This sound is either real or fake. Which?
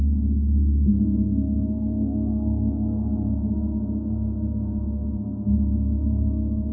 fake